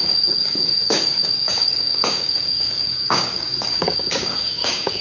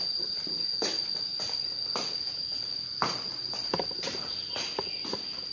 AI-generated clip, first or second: first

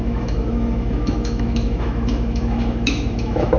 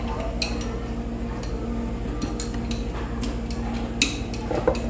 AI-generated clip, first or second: first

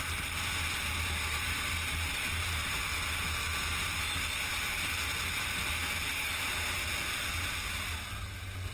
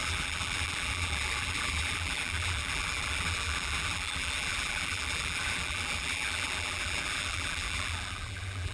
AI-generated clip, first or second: second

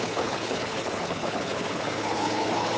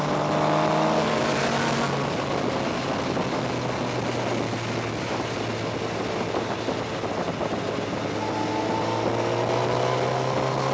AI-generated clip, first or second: first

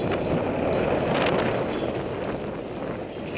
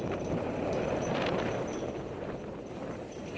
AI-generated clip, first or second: second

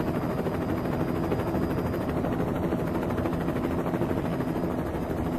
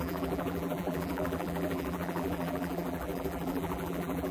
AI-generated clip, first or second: second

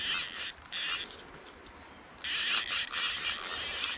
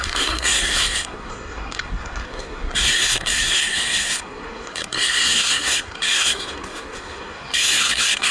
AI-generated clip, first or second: second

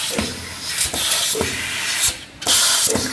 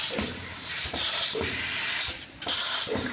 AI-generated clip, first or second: second